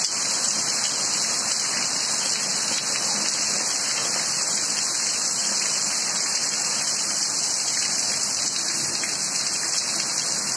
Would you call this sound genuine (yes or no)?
yes